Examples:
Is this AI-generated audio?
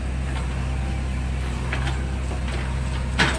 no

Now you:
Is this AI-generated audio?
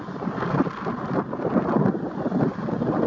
no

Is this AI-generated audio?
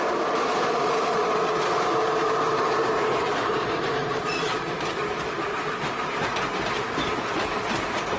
yes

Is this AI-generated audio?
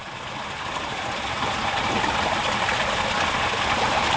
no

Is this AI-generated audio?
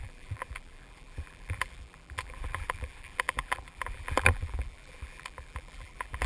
yes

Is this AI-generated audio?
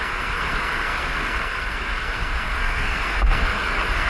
yes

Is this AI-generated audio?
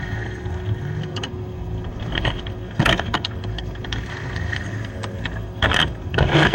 yes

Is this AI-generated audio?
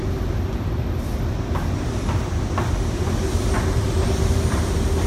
no